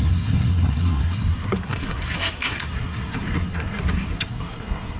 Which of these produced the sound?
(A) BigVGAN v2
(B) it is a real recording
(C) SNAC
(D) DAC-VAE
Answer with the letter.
C